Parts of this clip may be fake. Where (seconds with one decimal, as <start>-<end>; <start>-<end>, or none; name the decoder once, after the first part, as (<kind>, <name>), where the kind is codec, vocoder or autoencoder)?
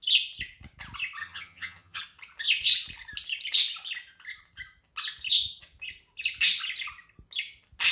1.2-2.0 (vocoder, HiFi-GAN)